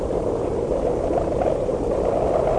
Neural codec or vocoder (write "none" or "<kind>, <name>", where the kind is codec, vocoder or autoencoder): none